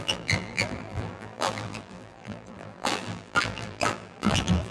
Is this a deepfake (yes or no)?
yes